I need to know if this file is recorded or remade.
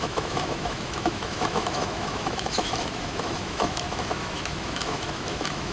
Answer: remade